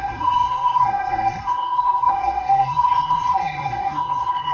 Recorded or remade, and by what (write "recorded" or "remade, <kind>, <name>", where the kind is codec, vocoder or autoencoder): remade, codec, SNAC